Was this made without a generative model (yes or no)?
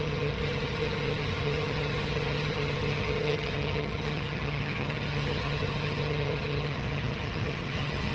no